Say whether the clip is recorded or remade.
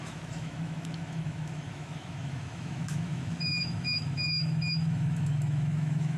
remade